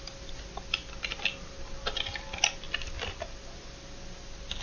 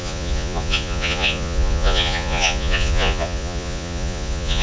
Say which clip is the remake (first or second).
second